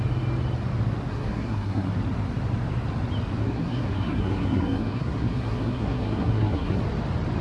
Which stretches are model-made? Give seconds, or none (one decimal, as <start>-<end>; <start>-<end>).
1.1-1.9; 3.4-6.8